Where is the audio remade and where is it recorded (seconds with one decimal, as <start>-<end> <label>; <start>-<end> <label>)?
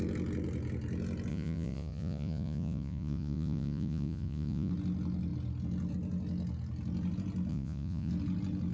0.0-1.3 recorded; 1.3-4.7 remade; 4.7-7.5 recorded; 7.5-8.1 remade; 8.1-8.7 recorded